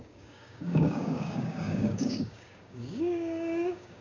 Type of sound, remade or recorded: remade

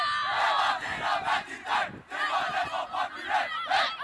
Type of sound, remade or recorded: recorded